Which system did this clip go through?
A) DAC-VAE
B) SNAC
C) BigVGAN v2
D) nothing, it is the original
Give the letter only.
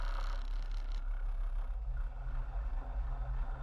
D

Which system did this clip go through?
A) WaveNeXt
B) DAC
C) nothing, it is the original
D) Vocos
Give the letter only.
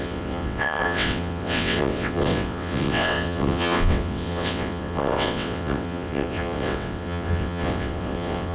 A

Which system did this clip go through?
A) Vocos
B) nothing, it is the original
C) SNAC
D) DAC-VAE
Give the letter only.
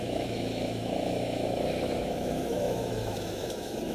D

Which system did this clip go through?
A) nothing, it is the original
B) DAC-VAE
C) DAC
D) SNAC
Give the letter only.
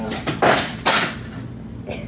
A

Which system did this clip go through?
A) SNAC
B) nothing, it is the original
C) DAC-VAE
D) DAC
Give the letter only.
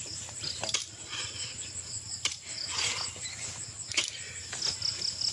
B